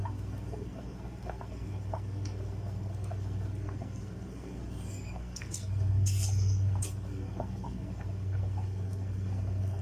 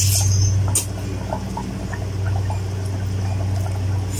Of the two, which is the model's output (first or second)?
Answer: first